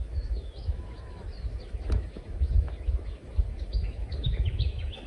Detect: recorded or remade remade